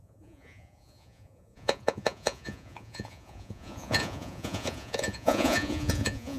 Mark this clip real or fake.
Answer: fake